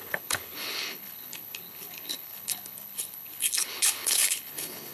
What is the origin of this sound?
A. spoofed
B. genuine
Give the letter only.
A